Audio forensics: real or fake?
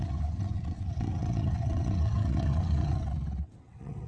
fake